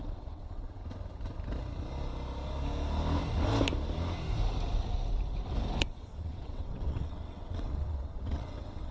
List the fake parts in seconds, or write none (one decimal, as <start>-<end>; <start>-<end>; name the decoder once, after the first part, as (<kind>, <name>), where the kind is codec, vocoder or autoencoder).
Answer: 0.0-0.8 (vocoder, WaveNeXt); 5.8-8.9